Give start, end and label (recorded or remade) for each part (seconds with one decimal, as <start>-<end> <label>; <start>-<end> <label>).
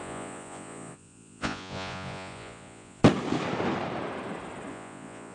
0.0-3.0 remade; 3.0-4.7 recorded; 4.7-5.3 remade